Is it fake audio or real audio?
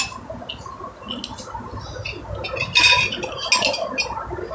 real